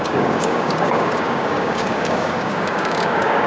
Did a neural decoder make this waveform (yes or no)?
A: yes